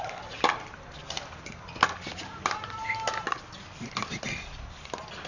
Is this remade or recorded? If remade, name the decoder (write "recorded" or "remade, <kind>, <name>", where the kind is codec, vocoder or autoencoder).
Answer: recorded